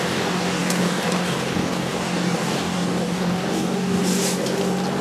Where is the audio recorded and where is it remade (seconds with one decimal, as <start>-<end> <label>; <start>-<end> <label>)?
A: 0.0-4.0 remade; 4.0-5.0 recorded